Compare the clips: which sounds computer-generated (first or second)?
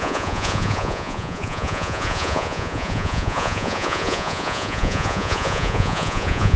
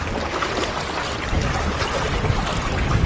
first